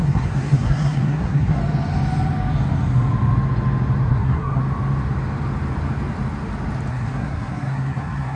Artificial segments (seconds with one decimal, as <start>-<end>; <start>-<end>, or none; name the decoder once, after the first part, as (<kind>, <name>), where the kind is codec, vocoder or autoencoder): 0.0-1.6 (codec, SNAC); 4.1-4.6; 6.9-8.4